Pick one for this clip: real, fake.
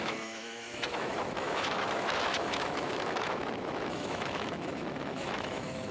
fake